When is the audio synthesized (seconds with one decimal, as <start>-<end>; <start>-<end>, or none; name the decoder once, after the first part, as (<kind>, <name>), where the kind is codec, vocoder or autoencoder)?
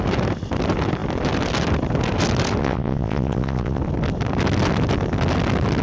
2.6-3.8 (vocoder, WaveNeXt)